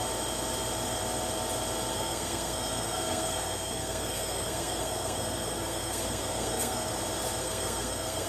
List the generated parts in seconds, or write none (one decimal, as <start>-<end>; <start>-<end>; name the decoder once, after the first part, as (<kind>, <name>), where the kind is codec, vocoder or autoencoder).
1.9-6.9 (codec, SNAC); 7.4-8.3